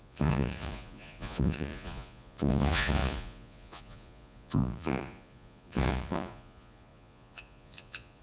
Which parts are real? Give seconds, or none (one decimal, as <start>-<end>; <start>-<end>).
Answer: none